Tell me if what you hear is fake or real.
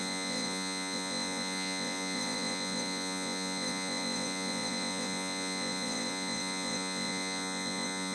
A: fake